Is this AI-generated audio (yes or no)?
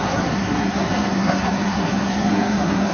yes